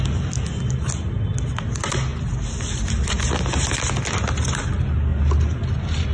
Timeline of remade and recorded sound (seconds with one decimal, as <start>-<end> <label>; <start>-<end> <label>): 0.0-6.1 recorded